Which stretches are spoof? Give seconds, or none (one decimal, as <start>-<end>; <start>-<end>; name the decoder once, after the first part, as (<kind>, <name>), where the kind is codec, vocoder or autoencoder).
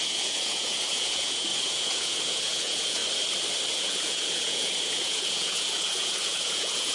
0.0-3.0 (vocoder, Vocos); 3.8-6.9